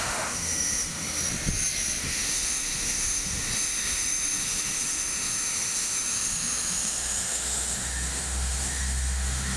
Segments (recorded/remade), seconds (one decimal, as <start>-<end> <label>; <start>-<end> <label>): 0.0-1.2 remade; 1.2-2.0 recorded; 2.0-9.6 remade